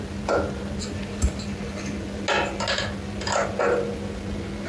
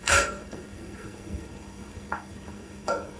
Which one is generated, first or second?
second